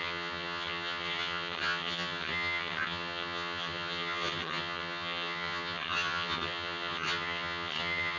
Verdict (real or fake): fake